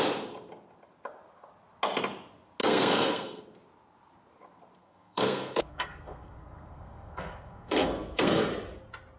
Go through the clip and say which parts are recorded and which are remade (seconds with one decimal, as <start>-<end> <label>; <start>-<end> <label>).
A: 0.0-2.6 recorded; 2.6-3.4 remade; 3.4-4.8 recorded; 4.8-8.5 remade; 8.5-9.2 recorded